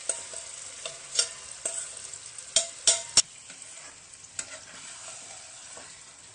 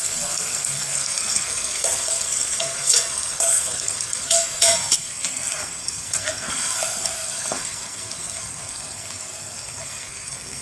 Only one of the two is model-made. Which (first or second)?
second